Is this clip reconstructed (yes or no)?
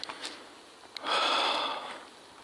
no